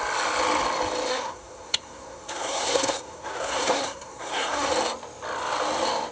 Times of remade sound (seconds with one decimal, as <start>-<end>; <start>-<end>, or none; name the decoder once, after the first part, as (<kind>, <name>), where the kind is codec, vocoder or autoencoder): 1.1-4.7 (codec, SNAC)